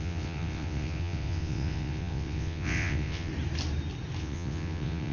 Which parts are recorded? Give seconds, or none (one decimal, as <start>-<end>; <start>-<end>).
3.3-4.2